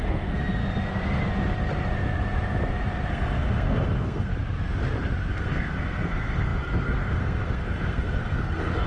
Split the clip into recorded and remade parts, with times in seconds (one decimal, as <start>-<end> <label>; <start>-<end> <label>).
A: 0.0-0.6 remade; 0.6-3.1 recorded; 3.1-4.3 remade; 4.3-5.3 recorded; 5.3-8.9 remade